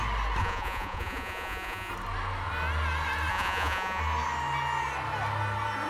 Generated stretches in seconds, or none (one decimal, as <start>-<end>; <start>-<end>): 0.4-1.9; 3.3-4.0

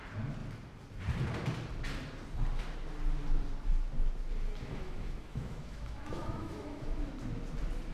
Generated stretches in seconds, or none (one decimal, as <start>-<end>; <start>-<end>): 4.7-7.0

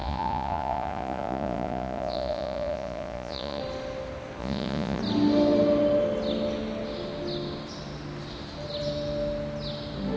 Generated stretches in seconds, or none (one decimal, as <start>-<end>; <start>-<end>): 0.0-3.6; 4.4-5.0